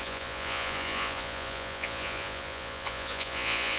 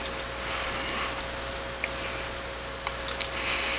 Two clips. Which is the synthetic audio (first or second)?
first